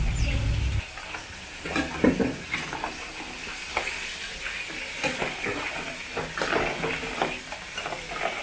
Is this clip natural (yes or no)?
yes